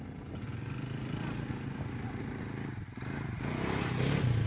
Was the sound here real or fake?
real